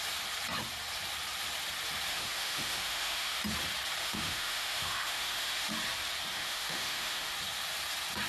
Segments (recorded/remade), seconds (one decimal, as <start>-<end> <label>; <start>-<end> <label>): 0.0-2.1 recorded; 2.1-3.4 remade; 3.4-4.0 recorded; 4.0-5.7 remade; 5.7-6.3 recorded; 6.3-7.3 remade; 7.3-8.3 recorded

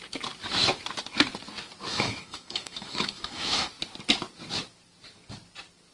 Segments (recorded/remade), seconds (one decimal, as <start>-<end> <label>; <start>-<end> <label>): 0.0-1.9 recorded; 1.9-3.7 remade; 3.7-5.9 recorded

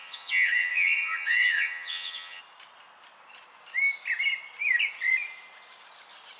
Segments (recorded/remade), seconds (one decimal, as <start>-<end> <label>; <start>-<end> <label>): 0.0-2.4 remade; 2.4-6.4 recorded